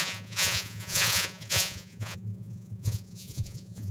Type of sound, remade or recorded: remade